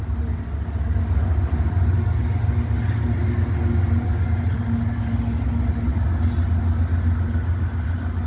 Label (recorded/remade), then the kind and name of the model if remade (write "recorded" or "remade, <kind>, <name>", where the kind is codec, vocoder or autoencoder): recorded